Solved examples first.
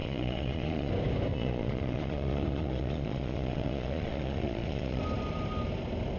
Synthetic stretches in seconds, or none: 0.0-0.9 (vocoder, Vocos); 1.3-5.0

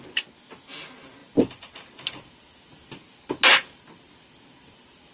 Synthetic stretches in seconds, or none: none

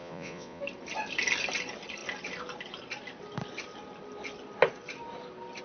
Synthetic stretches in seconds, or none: 0.0-0.6 (vocoder, Vocos)

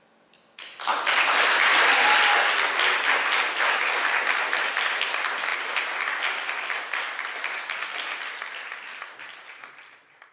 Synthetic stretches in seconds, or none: none

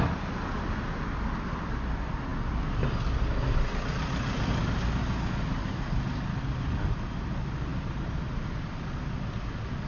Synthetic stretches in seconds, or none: none

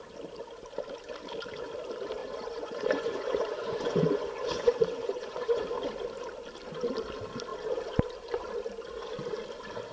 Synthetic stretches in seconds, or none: 2.2-5.6 (vocoder, Vocos)

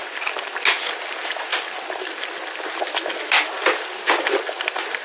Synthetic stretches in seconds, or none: none

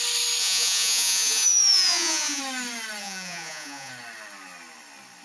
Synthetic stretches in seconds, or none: 0.4-2.4 (vocoder, Vocos); 3.0-3.9